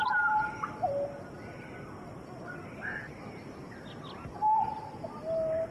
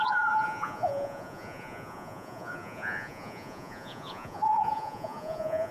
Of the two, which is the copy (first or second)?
second